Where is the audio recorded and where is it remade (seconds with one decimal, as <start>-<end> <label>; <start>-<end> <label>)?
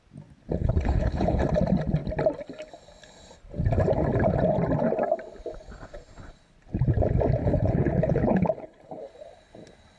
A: 0.0-0.6 recorded; 0.6-1.4 remade; 1.4-7.4 recorded; 7.4-9.1 remade; 9.1-10.0 recorded